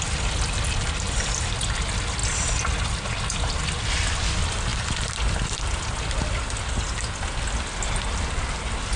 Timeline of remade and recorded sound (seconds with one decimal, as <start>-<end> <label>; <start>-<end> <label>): 0.0-9.0 recorded